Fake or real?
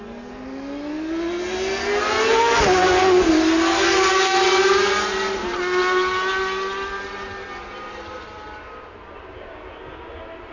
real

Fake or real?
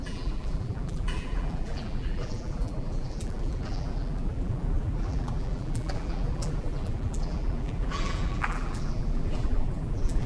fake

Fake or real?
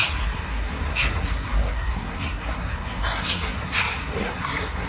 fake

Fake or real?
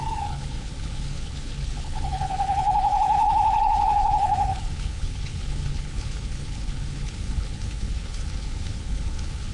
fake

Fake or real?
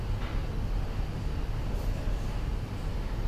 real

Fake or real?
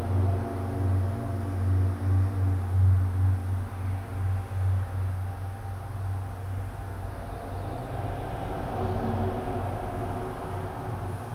real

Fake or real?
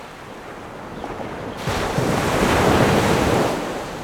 real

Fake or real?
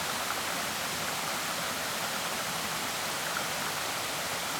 real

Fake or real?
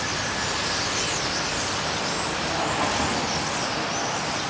real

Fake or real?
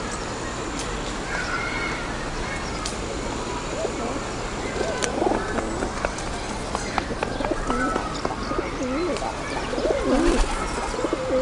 real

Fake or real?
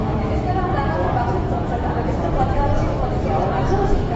fake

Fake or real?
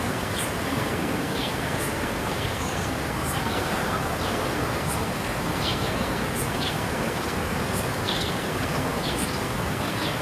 fake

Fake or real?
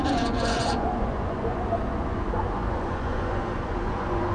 fake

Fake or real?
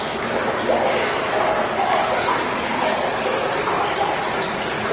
real